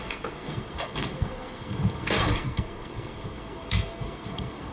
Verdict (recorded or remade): remade